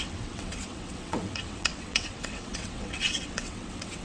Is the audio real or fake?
fake